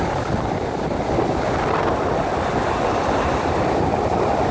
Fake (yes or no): no